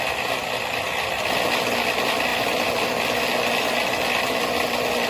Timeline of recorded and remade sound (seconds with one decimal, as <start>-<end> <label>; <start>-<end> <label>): 0.0-5.1 recorded